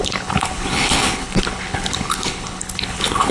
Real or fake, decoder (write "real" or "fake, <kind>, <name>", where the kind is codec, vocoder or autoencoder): fake, codec, HILCodec